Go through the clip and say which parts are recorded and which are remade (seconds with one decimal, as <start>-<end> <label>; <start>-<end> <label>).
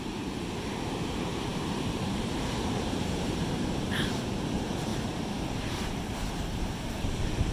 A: 0.0-4.9 remade; 4.9-6.5 recorded; 6.5-7.5 remade